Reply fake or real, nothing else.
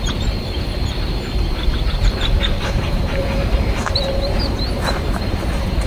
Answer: fake